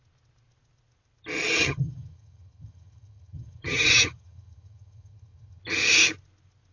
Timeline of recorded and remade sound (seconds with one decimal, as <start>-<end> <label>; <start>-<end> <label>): 0.0-1.6 recorded; 1.6-5.6 remade; 5.6-6.7 recorded

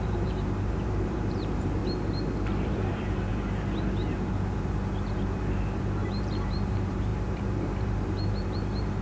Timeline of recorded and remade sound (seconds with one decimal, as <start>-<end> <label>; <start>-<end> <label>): 0.0-1.8 remade; 1.8-2.7 recorded; 2.7-3.3 remade; 3.3-4.1 recorded; 4.1-9.0 remade